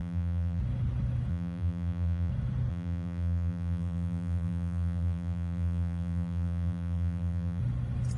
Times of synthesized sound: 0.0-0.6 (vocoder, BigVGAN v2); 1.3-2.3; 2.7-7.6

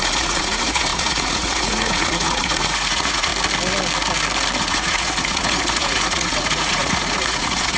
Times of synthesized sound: 0.0-3.3 (vocoder, Vocos); 4.6-7.8

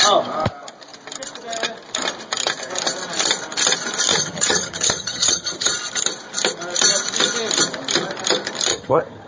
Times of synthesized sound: 4.1-5.7 (vocoder, HiFi-GAN); 8.7-9.3